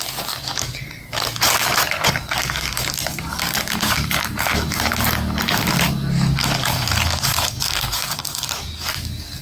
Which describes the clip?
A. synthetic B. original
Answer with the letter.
A